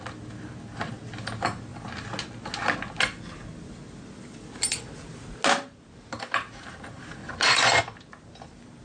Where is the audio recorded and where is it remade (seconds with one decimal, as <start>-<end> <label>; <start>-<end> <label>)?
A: 0.0-7.2 recorded; 7.2-7.8 remade; 7.8-8.8 recorded